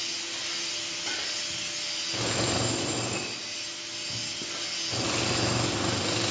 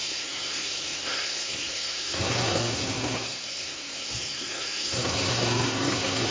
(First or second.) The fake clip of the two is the second